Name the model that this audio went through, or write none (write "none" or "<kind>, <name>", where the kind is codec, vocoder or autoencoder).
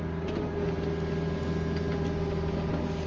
none